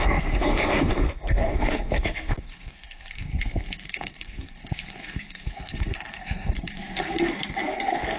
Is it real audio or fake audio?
fake